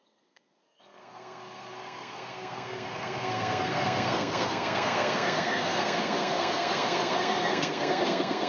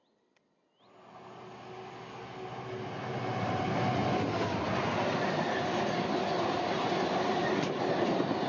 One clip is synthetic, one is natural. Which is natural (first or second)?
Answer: second